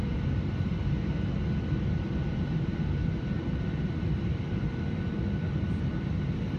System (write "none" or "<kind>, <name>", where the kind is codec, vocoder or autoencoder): none